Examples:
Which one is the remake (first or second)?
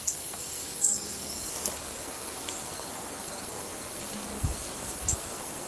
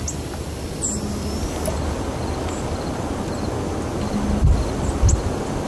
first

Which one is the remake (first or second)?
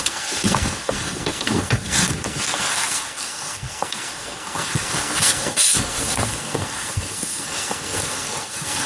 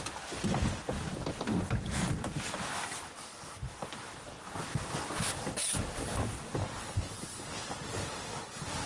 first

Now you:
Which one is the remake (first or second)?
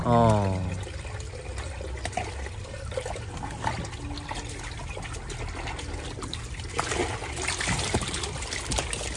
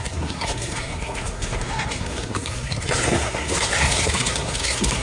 second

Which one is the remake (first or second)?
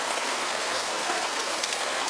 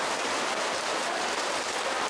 first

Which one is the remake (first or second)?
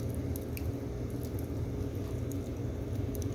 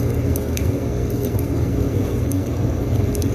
second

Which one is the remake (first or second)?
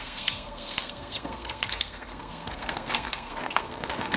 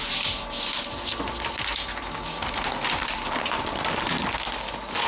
first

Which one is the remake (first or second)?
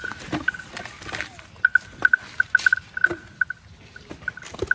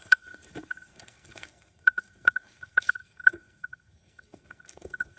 second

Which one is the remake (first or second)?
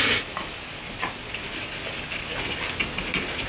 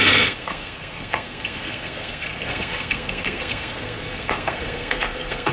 second